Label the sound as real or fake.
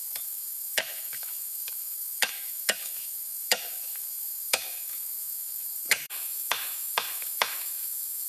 fake